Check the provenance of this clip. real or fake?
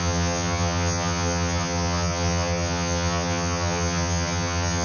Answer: fake